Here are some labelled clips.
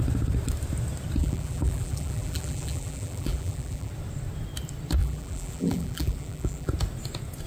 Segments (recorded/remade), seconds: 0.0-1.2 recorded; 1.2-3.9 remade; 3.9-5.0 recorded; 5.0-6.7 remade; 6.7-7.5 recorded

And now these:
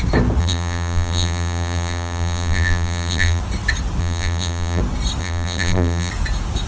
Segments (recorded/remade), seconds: 0.0-0.4 recorded; 0.4-3.4 remade; 3.4-4.0 recorded; 4.0-4.8 remade; 4.8-5.2 recorded; 5.2-6.1 remade; 6.1-6.7 recorded

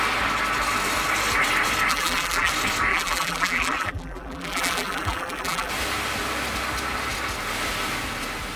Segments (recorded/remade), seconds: 0.0-1.9 recorded; 1.9-2.5 remade; 2.5-2.9 recorded; 2.9-5.7 remade; 5.7-8.6 recorded

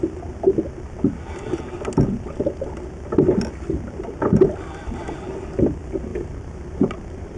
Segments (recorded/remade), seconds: 0.0-6.1 recorded; 6.1-7.4 remade